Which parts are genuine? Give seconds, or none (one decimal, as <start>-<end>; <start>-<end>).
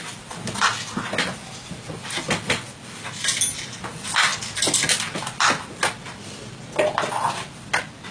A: 0.0-8.1